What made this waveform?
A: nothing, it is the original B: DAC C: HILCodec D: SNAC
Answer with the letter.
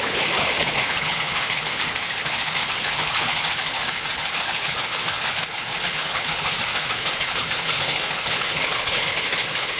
C